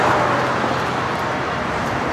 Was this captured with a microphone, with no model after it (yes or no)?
yes